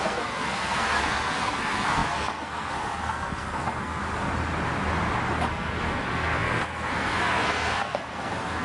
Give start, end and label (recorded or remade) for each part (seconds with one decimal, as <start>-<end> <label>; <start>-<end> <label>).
0.0-4.0 remade; 4.0-5.5 recorded; 5.5-8.6 remade